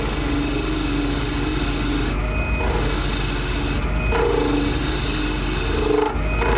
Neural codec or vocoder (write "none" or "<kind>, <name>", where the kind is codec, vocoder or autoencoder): none